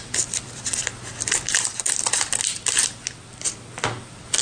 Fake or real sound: fake